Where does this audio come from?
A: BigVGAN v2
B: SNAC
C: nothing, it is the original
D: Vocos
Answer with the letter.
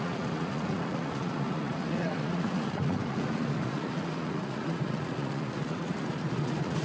D